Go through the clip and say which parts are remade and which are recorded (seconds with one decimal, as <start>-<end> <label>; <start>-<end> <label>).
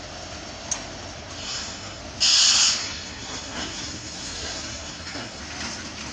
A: 0.0-1.4 recorded; 1.4-2.0 remade; 2.0-2.8 recorded; 2.8-5.4 remade; 5.4-6.1 recorded